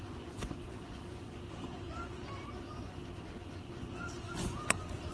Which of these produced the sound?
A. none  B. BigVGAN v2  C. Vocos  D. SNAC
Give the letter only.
C